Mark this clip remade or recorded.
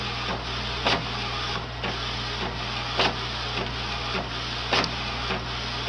recorded